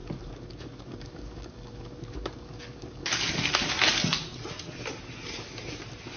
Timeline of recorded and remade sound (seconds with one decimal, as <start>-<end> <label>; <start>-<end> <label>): 0.0-3.7 remade; 3.7-6.2 recorded